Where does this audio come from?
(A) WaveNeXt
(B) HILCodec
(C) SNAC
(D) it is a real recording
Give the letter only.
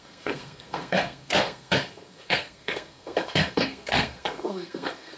C